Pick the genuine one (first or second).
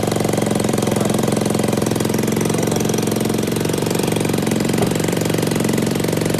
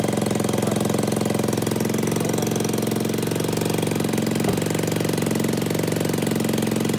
second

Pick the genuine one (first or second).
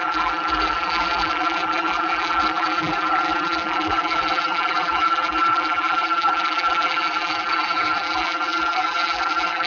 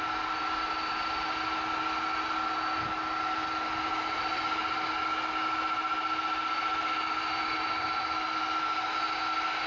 second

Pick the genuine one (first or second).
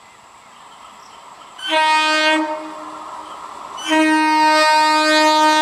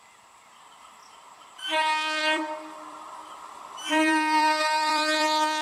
first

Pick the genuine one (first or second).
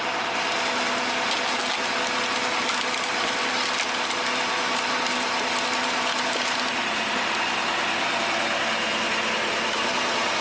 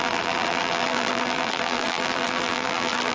first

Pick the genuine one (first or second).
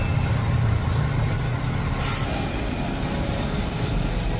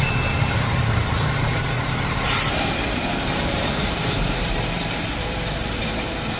first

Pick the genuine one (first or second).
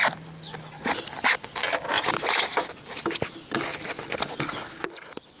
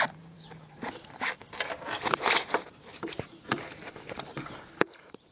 first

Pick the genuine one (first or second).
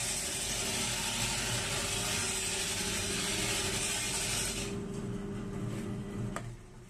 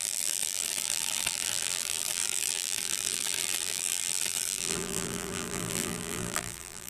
first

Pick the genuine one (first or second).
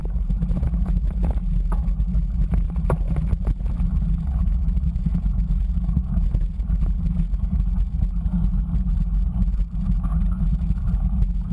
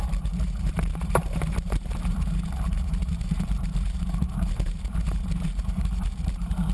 first